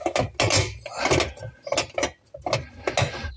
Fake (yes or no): no